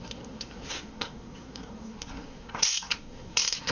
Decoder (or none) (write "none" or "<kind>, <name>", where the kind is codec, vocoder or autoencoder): codec, SNAC